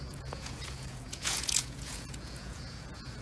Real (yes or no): no